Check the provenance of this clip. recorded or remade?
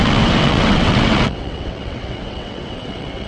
remade